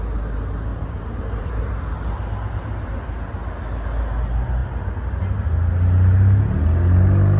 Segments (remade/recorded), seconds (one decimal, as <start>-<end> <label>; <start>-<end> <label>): 0.0-0.7 recorded; 0.7-1.7 remade; 1.7-7.4 recorded